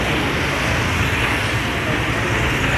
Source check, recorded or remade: recorded